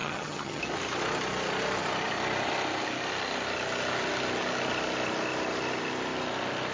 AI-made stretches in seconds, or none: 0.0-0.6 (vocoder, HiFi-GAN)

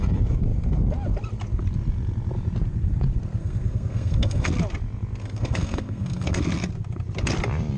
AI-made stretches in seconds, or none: 3.4-4.5 (codec, SNAC); 5.2-6.4

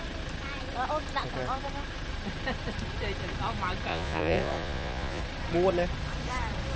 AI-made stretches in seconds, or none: 3.9-5.2 (vocoder, Vocos)

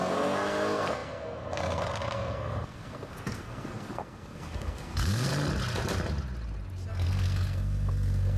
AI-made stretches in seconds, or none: 0.0-5.3 (codec, SNAC); 6.9-8.4

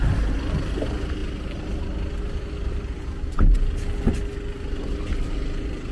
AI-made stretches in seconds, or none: none

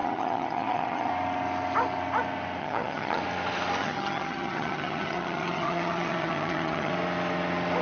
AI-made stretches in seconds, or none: 0.0-1.1 (vocoder, HiFi-GAN); 2.6-3.2; 3.8-6.9

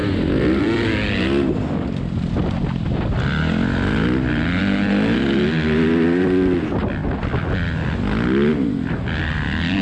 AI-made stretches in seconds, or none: none

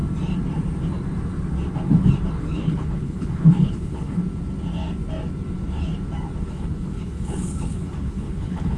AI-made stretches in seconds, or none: 2.4-4.2 (codec, HILCodec); 6.5-8.8